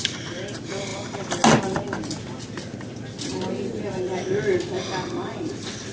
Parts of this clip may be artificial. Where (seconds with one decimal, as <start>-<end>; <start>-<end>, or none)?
none